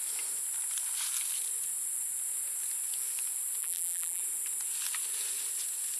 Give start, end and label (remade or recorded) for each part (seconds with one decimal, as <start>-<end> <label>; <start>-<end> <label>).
0.0-3.6 recorded; 3.6-4.2 remade; 4.2-6.0 recorded